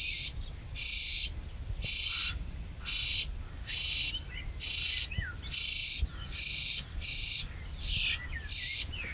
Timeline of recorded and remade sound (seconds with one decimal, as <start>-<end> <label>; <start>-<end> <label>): 0.0-9.1 recorded